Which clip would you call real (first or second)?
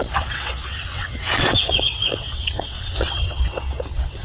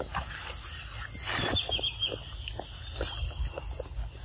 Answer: second